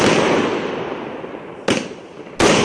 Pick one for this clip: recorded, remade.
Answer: recorded